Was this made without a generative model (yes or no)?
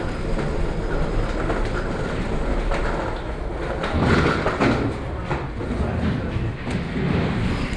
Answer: yes